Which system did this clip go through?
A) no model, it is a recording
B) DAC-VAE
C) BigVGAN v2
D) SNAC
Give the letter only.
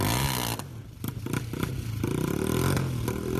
A